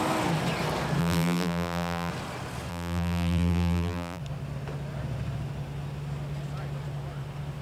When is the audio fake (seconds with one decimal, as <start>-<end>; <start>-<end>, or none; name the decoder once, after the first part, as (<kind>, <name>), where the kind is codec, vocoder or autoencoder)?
1.0-2.1 (vocoder, BigVGAN v2); 2.7-4.2